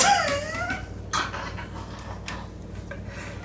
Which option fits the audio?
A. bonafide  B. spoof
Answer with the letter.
A